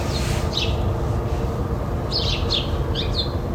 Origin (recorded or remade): recorded